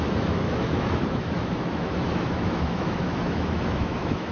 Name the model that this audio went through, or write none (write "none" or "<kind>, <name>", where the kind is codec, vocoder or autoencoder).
autoencoder, DAC-VAE